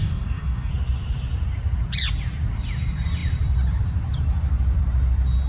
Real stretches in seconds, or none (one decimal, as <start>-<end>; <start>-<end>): 0.7-5.5